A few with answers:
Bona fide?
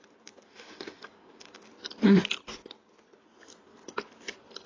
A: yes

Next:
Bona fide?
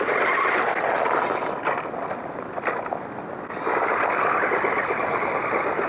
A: yes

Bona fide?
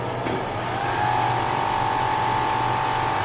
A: yes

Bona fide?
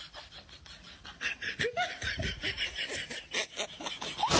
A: yes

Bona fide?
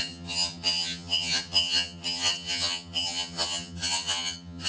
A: no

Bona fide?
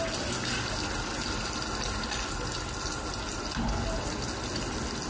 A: yes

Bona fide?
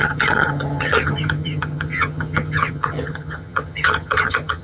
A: no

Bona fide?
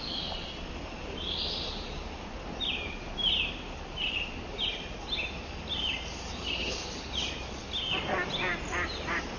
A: yes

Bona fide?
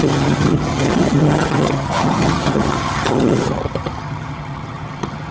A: no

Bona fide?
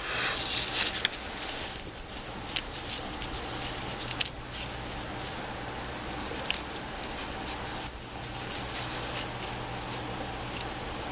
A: yes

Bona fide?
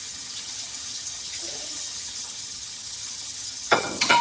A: no